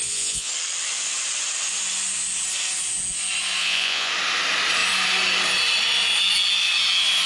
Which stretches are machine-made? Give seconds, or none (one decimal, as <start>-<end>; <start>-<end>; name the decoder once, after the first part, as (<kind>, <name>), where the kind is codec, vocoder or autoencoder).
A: 0.0-0.5 (vocoder, Vocos); 3.6-4.1